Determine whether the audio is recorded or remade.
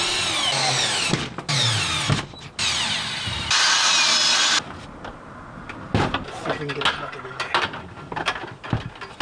recorded